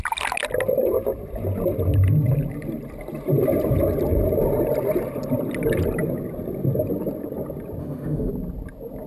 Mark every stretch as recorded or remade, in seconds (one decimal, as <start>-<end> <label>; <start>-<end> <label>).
0.0-7.8 recorded; 7.8-8.3 remade; 8.3-9.1 recorded